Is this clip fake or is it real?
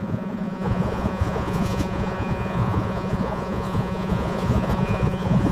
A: fake